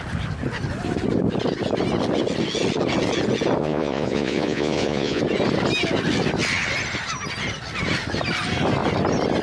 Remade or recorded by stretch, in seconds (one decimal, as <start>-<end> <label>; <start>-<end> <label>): 0.0-3.6 recorded; 3.6-5.2 remade; 5.2-9.4 recorded